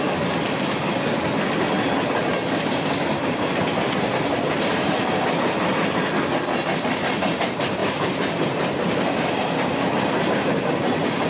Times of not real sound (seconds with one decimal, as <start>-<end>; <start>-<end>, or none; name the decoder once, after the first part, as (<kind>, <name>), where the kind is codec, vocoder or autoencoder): 7.8-11.3 (vocoder, BigVGAN v2)